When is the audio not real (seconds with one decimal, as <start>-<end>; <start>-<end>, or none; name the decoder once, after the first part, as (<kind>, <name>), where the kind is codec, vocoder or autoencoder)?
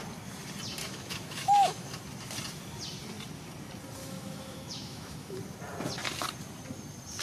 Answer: 0.8-2.0 (autoencoder, DAC-VAE); 4.0-5.4